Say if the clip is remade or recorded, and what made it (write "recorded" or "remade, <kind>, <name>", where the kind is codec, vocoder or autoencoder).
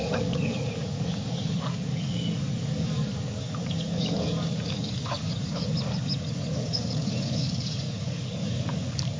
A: remade, codec, DAC